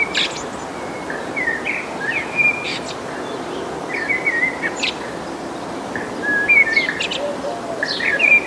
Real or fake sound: real